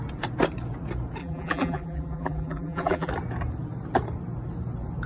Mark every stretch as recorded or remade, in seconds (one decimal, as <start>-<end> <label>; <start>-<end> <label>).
0.0-1.2 recorded; 1.2-3.1 remade; 3.1-5.1 recorded